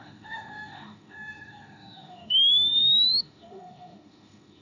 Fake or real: fake